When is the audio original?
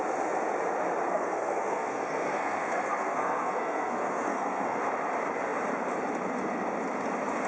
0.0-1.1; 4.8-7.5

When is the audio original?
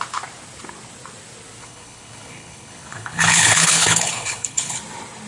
0.0-1.6; 4.8-5.3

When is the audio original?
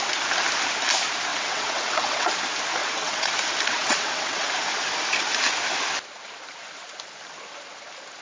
0.0-1.3; 2.3-2.8; 3.3-3.7; 4.5-8.2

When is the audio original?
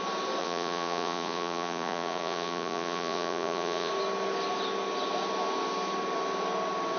0.0-0.4; 3.9-7.0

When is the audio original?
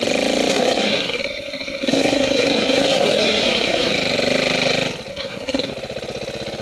0.0-0.5; 3.9-5.1; 5.7-6.6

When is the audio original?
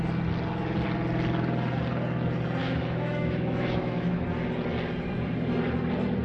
0.0-2.6; 4.2-6.2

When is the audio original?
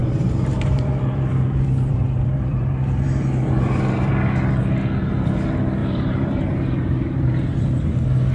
4.1-5.8; 7.6-8.3